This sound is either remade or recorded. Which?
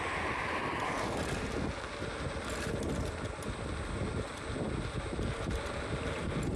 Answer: recorded